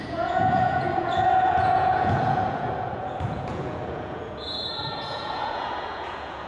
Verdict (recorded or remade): remade